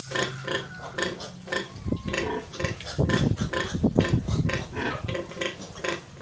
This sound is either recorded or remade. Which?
recorded